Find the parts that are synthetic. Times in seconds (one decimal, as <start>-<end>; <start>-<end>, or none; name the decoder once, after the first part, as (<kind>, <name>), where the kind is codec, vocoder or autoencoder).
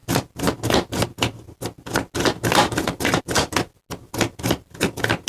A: none